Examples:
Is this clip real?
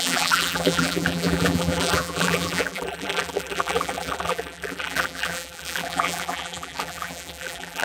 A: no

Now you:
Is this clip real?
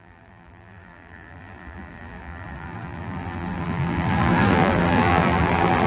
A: no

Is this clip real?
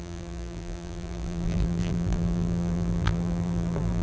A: no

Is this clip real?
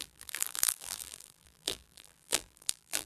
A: no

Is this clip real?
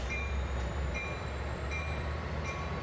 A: no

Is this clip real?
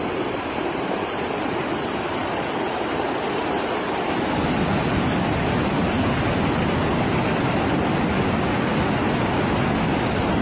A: yes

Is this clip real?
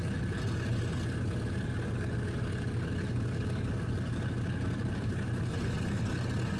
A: yes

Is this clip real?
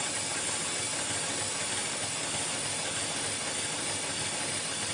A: yes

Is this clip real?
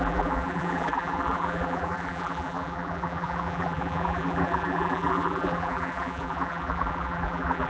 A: no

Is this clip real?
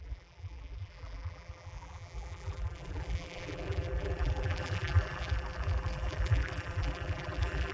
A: no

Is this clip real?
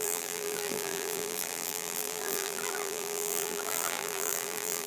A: no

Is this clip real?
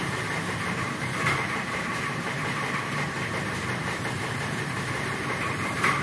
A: no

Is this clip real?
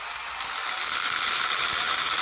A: yes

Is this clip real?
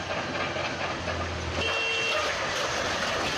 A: yes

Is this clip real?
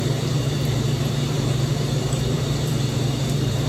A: no